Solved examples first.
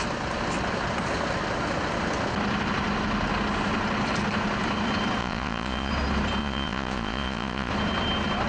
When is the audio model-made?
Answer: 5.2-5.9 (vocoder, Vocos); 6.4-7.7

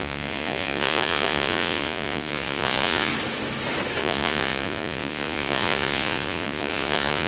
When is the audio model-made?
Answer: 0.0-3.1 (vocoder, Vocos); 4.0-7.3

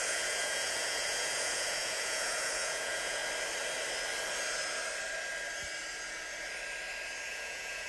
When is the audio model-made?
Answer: 0.0-3.2 (vocoder, Vocos); 7.3-7.9

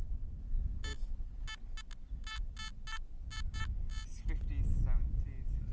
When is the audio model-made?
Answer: none